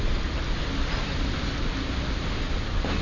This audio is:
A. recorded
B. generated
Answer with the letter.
A